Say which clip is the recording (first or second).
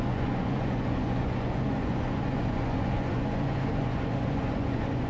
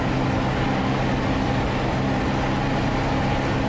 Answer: second